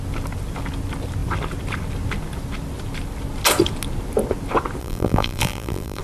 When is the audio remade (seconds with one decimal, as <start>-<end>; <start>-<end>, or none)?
4.8-6.0